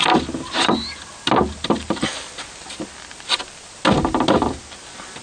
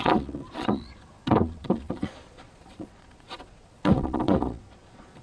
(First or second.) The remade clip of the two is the second